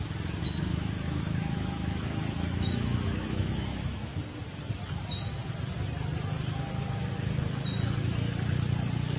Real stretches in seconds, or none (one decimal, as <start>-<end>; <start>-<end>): 0.0-0.7; 4.2-9.2